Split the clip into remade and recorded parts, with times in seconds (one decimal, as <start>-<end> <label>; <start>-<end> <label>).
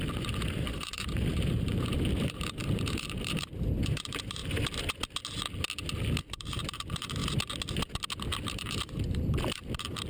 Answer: 0.0-4.4 remade; 4.4-6.2 recorded; 6.2-7.2 remade; 7.2-8.5 recorded; 8.5-10.1 remade